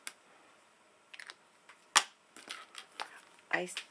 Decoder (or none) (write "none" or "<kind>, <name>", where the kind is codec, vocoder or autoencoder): none